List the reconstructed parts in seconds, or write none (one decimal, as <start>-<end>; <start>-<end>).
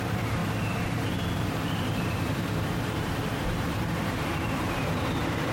0.0-5.5